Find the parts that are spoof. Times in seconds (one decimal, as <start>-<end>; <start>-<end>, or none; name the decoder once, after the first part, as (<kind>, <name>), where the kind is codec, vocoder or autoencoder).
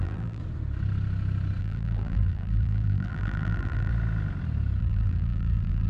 0.0-0.4 (vocoder, BigVGAN v2); 1.6-3.9; 4.8-5.9